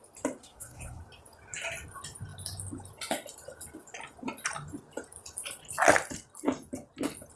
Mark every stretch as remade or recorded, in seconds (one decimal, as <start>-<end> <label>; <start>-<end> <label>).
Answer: 0.0-0.4 recorded; 0.4-1.0 remade; 1.0-7.4 recorded